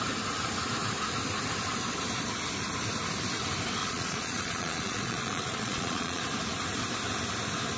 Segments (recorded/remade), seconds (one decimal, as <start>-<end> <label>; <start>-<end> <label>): 0.0-3.8 recorded; 3.8-6.2 remade; 6.2-7.8 recorded